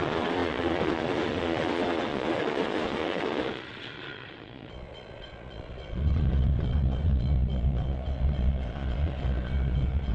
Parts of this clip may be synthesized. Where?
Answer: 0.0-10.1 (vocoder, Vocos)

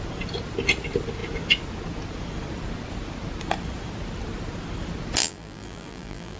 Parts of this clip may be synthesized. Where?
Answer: 5.2-6.4 (vocoder, BigVGAN v2)